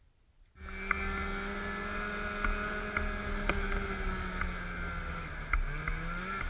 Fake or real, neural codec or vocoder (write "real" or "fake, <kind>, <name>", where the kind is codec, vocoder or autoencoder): real